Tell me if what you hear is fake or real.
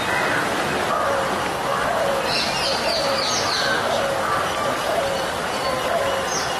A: real